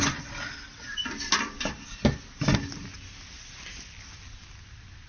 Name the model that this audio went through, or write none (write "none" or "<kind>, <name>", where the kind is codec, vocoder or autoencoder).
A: none